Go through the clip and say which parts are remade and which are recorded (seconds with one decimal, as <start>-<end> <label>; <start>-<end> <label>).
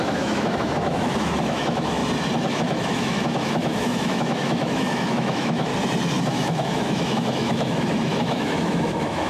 0.0-2.0 remade; 2.0-2.5 recorded; 2.5-5.7 remade; 5.7-6.2 recorded; 6.2-9.3 remade